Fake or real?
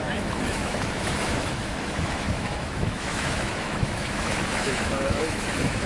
fake